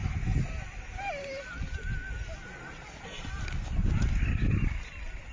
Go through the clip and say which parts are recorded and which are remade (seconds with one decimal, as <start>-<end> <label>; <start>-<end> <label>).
0.0-5.3 recorded